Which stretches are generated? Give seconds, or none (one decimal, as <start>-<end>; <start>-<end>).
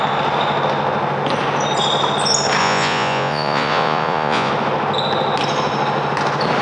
2.6-4.5